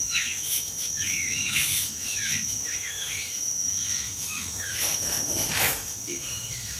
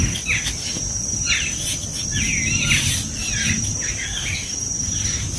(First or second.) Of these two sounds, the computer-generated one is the first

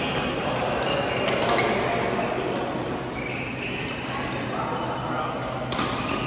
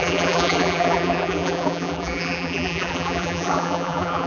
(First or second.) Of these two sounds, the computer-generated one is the second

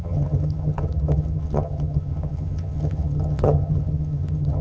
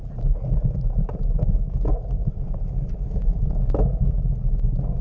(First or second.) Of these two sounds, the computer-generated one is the first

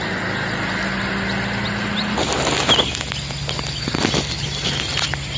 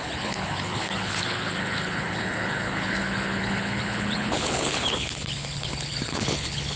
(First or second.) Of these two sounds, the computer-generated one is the second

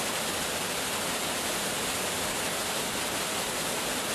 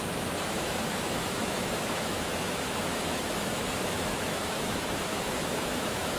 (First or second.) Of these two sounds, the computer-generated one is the second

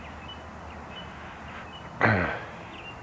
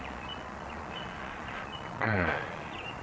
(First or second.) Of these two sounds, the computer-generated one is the second